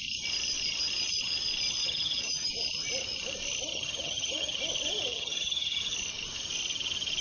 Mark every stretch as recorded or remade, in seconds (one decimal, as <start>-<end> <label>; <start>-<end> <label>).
0.0-1.8 recorded; 1.8-2.5 remade; 2.5-3.7 recorded; 3.7-4.6 remade; 4.6-5.1 recorded; 5.1-5.8 remade; 5.8-7.2 recorded